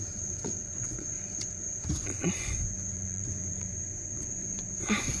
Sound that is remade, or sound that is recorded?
remade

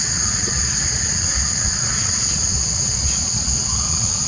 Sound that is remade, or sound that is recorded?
remade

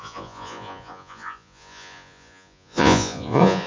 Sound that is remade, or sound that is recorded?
remade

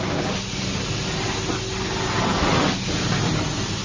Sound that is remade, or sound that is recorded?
recorded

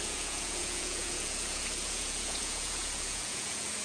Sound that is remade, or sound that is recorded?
remade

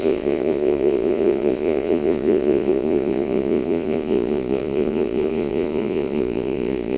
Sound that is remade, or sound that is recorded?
remade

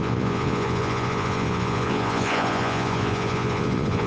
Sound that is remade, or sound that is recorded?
remade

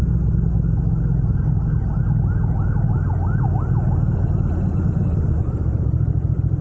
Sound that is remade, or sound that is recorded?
recorded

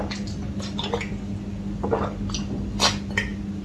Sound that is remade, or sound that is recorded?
recorded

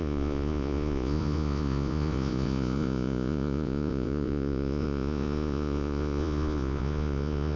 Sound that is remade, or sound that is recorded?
remade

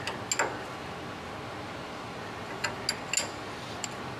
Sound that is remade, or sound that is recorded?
recorded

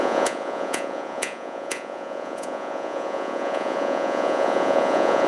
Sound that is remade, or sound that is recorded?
remade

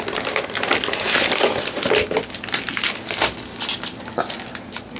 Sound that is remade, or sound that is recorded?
recorded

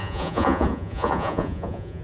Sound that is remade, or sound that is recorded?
remade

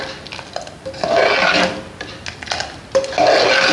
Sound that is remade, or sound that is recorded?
recorded